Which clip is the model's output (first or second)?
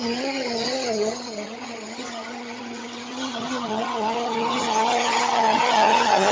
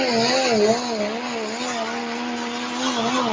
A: first